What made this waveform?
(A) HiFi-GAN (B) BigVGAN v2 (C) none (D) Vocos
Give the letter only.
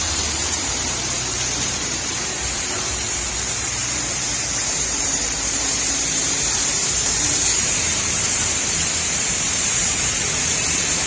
B